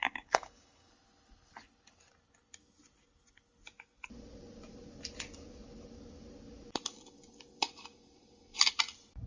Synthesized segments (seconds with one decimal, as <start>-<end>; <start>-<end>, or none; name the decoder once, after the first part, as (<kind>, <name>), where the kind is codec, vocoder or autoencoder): 0.0-0.9 (codec, DAC)